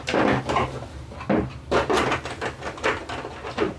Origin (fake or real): real